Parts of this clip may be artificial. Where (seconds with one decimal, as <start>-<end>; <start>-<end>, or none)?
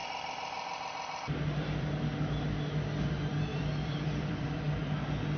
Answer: 0.0-2.0; 3.5-4.8